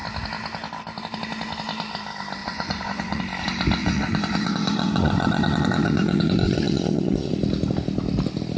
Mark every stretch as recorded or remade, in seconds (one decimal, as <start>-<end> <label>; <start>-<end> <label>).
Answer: 0.0-2.4 recorded; 2.4-3.2 remade; 3.2-3.8 recorded; 3.8-7.3 remade; 7.3-8.6 recorded